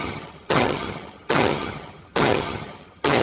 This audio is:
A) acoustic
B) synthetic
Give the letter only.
B